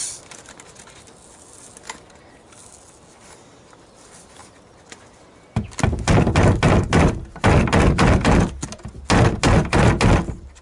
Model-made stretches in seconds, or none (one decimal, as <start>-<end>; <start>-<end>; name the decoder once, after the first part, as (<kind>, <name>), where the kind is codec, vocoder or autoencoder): none